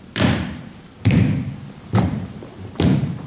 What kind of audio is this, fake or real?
fake